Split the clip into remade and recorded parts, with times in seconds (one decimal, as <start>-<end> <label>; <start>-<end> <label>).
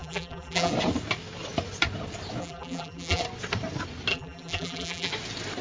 0.0-0.7 remade; 0.7-2.4 recorded; 2.4-3.2 remade; 3.2-4.1 recorded; 4.1-5.1 remade; 5.1-5.6 recorded